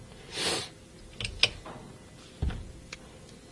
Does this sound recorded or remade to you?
recorded